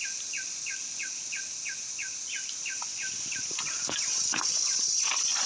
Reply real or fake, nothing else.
real